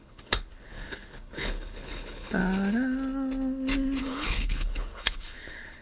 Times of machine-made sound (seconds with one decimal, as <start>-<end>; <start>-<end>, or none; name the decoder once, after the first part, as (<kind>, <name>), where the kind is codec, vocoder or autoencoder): 0.0-2.4 (codec, HILCodec); 4.0-5.8